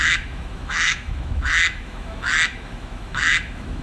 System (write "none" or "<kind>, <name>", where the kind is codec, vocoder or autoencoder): autoencoder, DAC-VAE